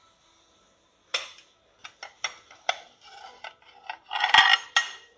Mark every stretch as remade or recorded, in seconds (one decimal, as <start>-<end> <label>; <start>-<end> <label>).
0.0-5.2 recorded